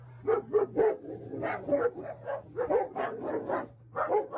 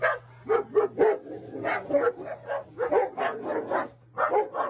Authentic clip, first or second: second